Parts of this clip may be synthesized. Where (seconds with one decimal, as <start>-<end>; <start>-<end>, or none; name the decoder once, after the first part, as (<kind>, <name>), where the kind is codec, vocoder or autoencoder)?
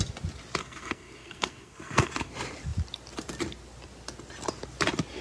0.6-2.3 (codec, SNAC)